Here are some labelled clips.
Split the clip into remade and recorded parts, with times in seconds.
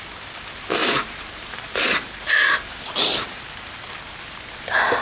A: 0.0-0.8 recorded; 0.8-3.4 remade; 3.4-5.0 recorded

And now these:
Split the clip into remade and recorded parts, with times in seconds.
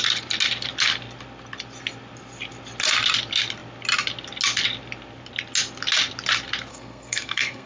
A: 0.0-6.7 recorded; 6.7-7.7 remade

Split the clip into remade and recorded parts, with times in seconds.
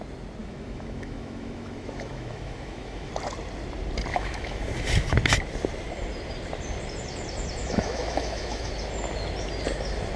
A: 0.0-0.4 recorded; 0.4-3.1 remade; 3.1-4.1 recorded; 4.1-4.7 remade; 4.7-7.6 recorded; 7.6-8.7 remade; 8.7-10.2 recorded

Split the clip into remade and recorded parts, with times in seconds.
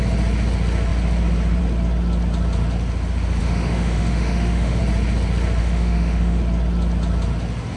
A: 0.0-3.4 recorded; 3.4-4.8 remade; 4.8-5.6 recorded; 5.6-6.4 remade; 6.4-7.8 recorded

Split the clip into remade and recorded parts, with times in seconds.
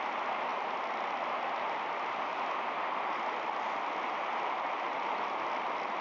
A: 0.0-6.0 recorded